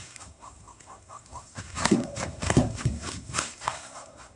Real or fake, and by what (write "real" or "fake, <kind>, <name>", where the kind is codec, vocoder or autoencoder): fake, codec, SNAC